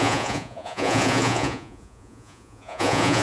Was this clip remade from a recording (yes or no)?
yes